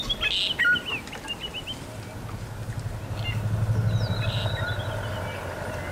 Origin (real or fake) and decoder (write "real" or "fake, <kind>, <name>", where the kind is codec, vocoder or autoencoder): real